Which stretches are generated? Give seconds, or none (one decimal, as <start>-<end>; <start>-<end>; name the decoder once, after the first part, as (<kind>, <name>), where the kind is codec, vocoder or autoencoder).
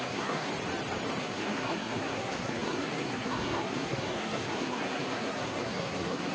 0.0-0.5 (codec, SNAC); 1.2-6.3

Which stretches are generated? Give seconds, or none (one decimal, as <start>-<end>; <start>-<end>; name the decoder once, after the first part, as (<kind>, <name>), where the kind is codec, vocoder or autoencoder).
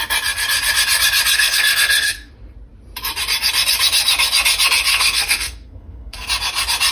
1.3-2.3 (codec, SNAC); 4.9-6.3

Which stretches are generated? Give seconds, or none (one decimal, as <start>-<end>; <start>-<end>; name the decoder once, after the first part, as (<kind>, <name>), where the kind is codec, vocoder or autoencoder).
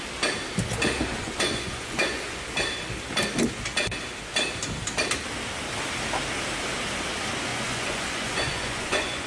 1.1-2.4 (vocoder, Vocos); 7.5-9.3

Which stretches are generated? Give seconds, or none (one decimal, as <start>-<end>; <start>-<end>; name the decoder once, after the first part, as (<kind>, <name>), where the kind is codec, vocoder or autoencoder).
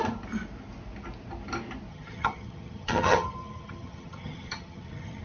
1.9-5.2 (vocoder, HiFi-GAN)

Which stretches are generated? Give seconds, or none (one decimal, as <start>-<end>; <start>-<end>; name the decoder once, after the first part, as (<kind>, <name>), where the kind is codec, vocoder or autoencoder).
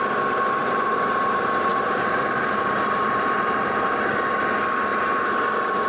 0.6-4.1 (vocoder, BigVGAN v2); 4.9-5.9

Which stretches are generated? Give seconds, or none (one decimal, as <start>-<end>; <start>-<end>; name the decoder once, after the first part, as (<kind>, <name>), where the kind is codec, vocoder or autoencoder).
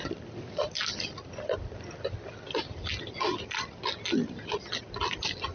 none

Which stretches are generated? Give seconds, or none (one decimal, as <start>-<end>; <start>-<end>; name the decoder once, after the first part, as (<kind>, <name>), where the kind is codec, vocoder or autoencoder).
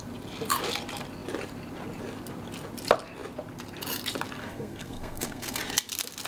4.4-5.6 (codec, SNAC)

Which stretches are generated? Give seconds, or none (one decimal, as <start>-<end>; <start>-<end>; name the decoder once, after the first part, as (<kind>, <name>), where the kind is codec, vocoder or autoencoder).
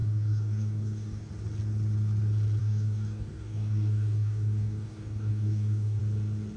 0.0-1.3 (codec, DAC); 2.6-6.0